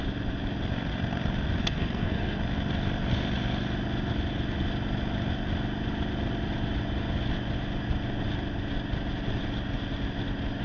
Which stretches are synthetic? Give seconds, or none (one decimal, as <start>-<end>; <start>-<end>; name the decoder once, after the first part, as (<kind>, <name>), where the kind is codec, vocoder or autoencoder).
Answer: 1.6-2.4 (codec, SNAC)